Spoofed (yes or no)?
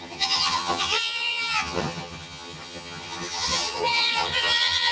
yes